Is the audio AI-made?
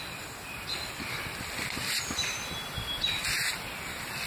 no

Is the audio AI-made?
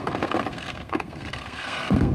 yes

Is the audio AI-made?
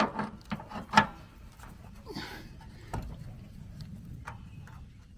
no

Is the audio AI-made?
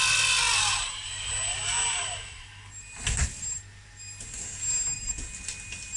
no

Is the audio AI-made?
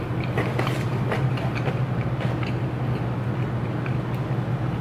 no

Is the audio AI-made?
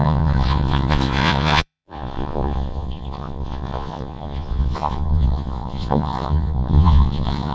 yes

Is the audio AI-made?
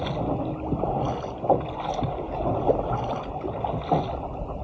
no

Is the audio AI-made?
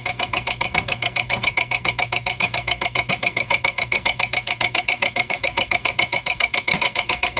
yes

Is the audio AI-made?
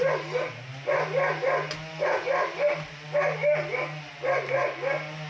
no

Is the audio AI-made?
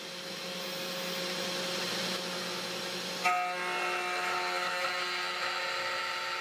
no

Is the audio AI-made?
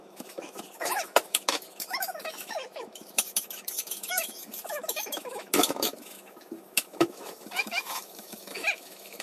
yes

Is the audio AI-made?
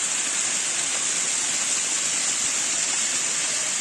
no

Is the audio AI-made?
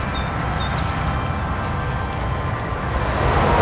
no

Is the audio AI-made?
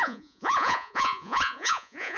yes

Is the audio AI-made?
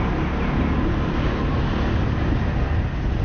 no